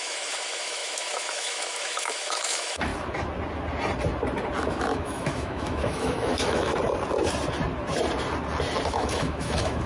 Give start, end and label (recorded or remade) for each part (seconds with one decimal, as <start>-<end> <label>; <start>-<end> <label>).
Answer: 0.0-2.9 remade; 2.9-4.6 recorded; 4.6-6.7 remade; 6.7-8.9 recorded; 8.9-9.9 remade